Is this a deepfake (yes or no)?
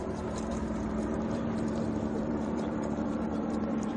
yes